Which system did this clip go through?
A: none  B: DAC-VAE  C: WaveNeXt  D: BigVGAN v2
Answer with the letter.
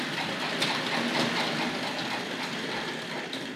A